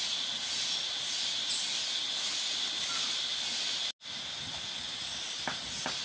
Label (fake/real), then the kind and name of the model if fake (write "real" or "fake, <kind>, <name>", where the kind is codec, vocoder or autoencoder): real